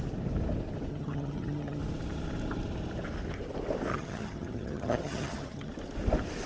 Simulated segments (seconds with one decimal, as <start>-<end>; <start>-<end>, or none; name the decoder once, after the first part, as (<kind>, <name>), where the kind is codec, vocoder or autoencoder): 0.9-1.8 (vocoder, HiFi-GAN); 3.9-5.7